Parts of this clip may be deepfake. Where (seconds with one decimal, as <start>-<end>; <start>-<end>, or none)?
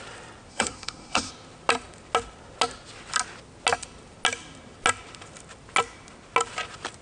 0.5-1.3